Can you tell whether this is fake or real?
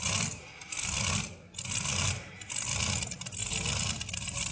real